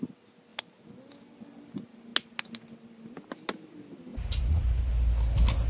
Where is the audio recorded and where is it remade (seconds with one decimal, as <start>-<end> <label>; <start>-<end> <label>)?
0.0-4.1 recorded; 4.1-4.8 remade; 4.8-5.7 recorded

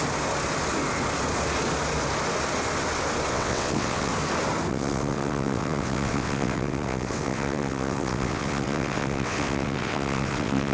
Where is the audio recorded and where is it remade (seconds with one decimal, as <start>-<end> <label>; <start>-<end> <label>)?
0.0-3.3 recorded; 3.3-4.1 remade; 4.1-4.7 recorded; 4.7-10.7 remade

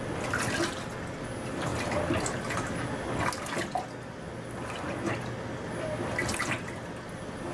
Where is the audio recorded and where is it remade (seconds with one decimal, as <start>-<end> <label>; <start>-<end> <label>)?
0.0-7.5 recorded

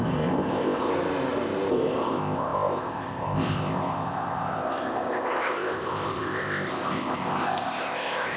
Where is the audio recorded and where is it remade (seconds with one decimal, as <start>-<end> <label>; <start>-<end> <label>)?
0.0-0.9 remade; 0.9-1.7 recorded; 1.7-8.4 remade

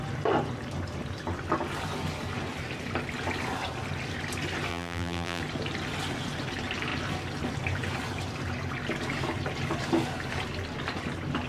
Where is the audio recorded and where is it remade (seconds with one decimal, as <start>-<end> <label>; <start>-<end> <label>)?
0.0-4.7 recorded; 4.7-5.4 remade; 5.4-11.5 recorded

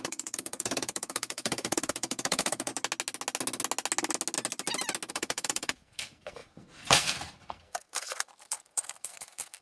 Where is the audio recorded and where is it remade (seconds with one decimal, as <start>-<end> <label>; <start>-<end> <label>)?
0.0-2.7 remade; 2.7-5.1 recorded; 5.1-9.6 remade

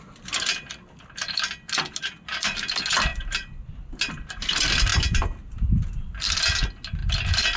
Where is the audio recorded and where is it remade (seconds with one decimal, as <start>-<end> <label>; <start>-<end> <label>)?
0.0-3.1 recorded; 3.1-4.1 remade; 4.1-4.9 recorded; 4.9-5.7 remade; 5.7-7.0 recorded; 7.0-7.6 remade

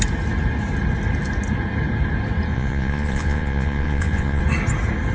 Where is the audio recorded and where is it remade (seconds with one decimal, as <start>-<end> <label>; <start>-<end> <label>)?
0.0-2.5 recorded; 2.5-4.4 remade; 4.4-5.1 recorded